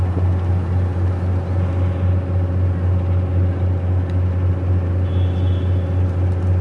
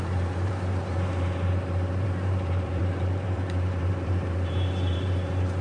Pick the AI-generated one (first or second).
second